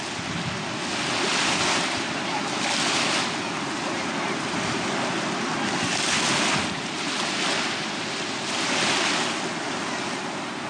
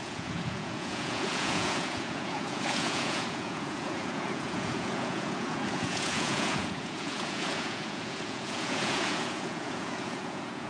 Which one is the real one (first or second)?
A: first